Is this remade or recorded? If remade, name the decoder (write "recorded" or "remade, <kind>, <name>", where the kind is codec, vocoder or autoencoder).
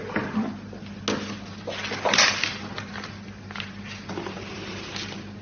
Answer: recorded